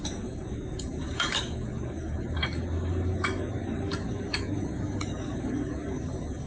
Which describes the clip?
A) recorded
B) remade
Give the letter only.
B